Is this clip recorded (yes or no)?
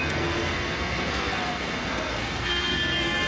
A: no